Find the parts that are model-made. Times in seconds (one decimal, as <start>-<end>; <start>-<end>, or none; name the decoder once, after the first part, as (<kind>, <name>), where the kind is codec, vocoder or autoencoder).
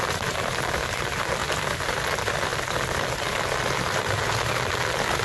none